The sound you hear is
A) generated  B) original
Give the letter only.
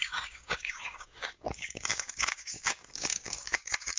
A